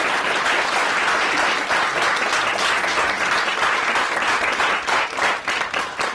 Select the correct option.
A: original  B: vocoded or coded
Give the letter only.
A